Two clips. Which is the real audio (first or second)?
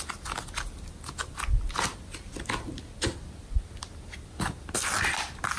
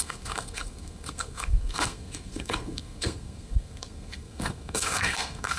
first